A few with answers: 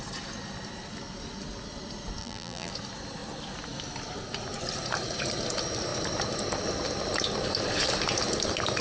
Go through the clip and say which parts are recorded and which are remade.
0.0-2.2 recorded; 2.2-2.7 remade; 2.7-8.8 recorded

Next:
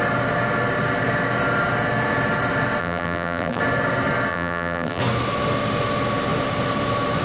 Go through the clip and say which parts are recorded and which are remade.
0.0-2.8 recorded; 2.8-3.6 remade; 3.6-4.3 recorded; 4.3-5.0 remade; 5.0-7.2 recorded

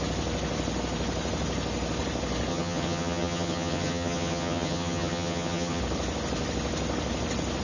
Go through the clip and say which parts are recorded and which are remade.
0.0-2.5 recorded; 2.5-5.8 remade; 5.8-7.6 recorded

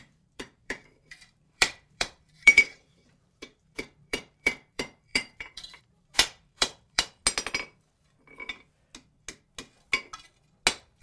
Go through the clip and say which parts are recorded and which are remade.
0.0-7.2 remade; 7.2-11.0 recorded

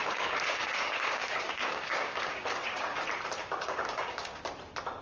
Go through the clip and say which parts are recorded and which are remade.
0.0-3.0 remade; 3.0-3.4 recorded; 3.4-4.4 remade; 4.4-5.0 recorded